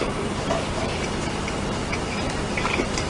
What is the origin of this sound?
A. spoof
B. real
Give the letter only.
A